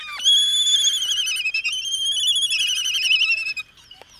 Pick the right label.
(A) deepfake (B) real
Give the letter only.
B